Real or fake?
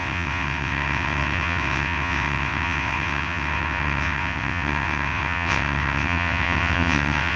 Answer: fake